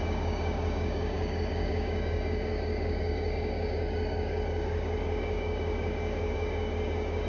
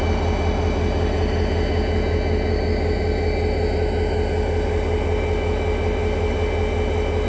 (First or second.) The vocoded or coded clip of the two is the first